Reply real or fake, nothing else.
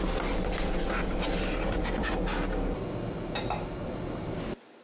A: real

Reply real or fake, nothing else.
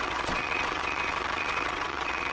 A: fake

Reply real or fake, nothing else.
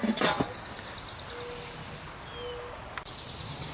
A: real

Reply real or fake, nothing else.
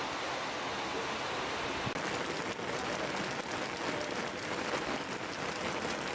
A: real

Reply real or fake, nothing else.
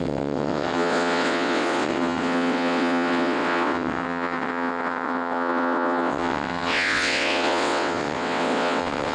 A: fake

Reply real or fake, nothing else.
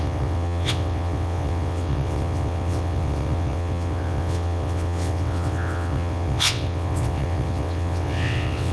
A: fake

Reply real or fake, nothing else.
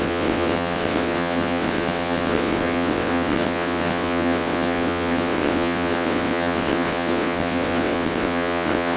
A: fake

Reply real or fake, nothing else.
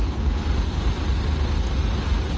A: real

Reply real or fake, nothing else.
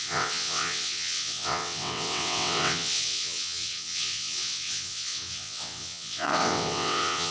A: fake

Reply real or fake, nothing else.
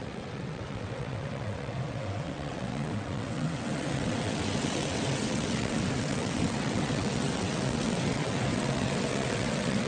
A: fake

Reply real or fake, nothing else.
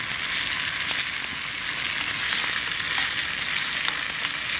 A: real